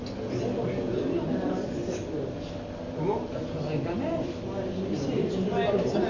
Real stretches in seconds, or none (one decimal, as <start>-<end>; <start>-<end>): 0.0-6.1